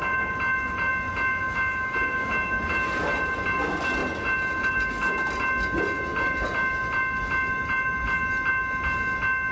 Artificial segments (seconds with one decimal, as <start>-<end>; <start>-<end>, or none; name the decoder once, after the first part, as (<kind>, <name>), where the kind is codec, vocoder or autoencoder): 1.3-2.3 (autoencoder, DAC-VAE)